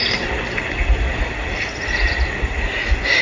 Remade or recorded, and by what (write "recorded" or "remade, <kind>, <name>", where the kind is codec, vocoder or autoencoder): recorded